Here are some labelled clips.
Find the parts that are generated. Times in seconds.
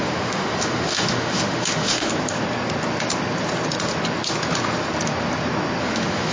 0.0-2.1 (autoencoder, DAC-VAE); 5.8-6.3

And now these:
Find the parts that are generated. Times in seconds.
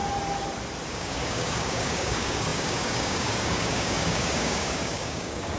0.9-5.6 (codec, DAC)